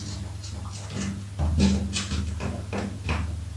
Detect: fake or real real